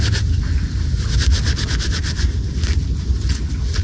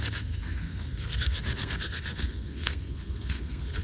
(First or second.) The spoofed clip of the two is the second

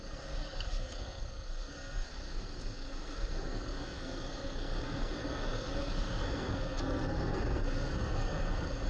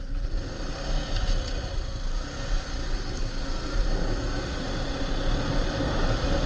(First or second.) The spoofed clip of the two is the first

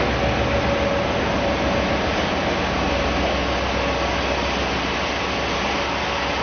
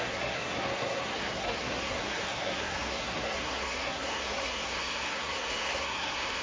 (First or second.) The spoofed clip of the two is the second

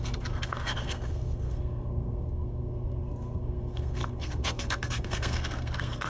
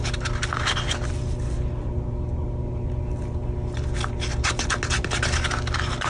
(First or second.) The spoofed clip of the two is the first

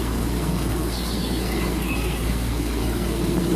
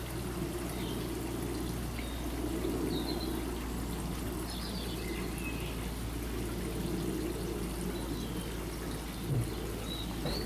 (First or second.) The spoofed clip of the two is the first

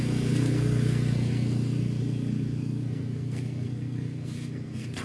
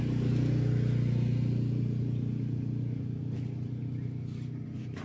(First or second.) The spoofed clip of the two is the first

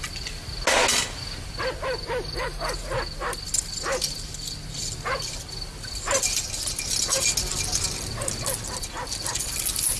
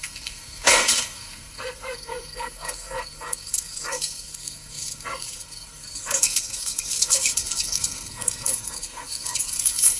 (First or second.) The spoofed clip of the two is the second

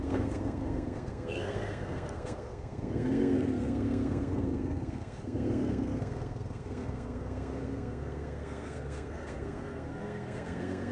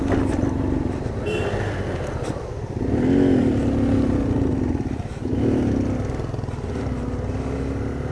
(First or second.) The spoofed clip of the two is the first